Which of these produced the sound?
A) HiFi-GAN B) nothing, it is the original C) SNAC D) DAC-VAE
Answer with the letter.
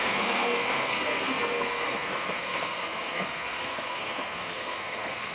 C